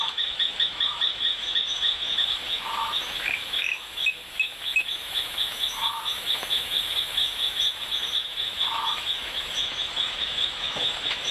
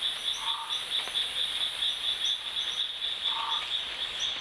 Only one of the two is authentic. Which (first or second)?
second